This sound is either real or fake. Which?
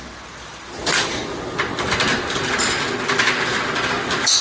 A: real